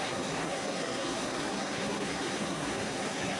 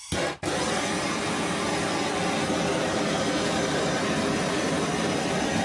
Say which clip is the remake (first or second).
first